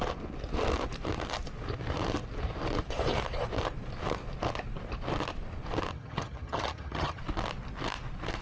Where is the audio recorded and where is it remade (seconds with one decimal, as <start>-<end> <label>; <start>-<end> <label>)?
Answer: 0.0-5.9 recorded; 5.9-7.2 remade; 7.2-8.4 recorded